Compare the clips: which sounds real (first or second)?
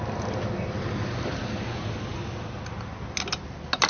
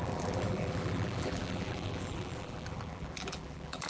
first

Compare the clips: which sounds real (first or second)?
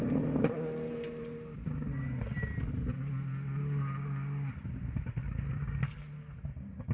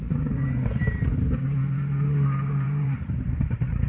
first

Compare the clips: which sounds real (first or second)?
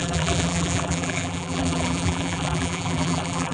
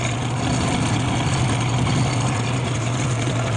second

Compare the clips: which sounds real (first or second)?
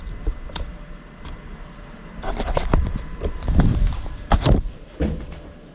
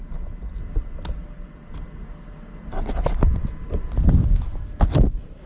second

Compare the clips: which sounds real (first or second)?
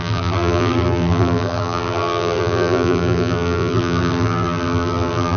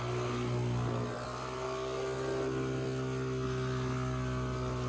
second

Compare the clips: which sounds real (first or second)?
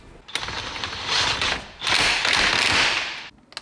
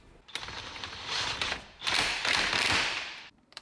first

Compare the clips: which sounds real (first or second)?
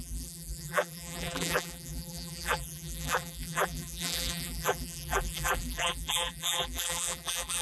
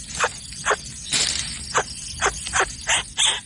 second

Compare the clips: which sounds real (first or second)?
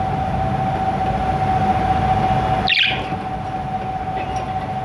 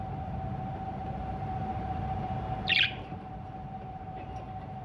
first